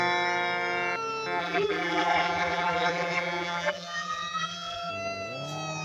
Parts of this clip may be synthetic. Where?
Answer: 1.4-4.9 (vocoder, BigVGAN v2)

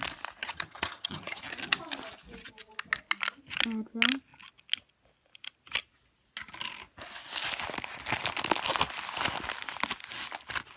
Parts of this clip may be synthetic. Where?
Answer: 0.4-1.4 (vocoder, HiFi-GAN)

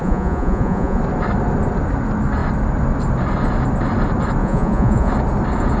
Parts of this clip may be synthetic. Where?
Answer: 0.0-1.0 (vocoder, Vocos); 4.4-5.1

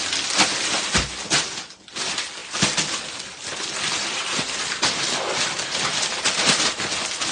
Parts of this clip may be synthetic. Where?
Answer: none

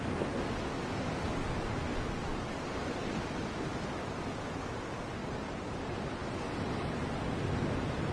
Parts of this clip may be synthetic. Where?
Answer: 2.2-2.8 (vocoder, BigVGAN v2); 5.2-5.7

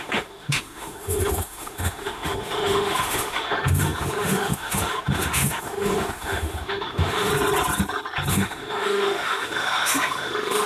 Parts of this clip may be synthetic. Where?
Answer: 0.0-7.3 (autoencoder, DAC-VAE); 8.3-10.7

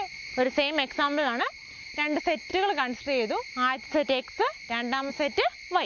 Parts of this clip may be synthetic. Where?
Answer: none

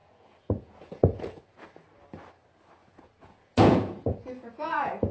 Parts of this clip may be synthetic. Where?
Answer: 0.0-1.7 (vocoder, Vocos); 2.8-5.1